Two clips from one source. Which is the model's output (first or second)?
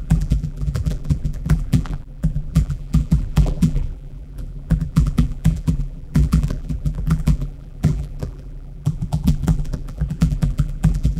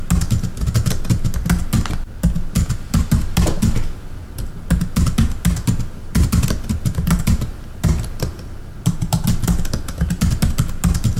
first